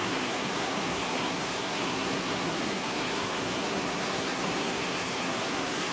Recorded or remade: remade